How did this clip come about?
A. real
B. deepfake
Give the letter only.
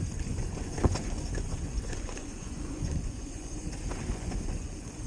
B